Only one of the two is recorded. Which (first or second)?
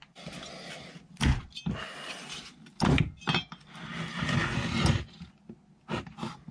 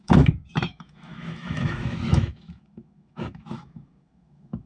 first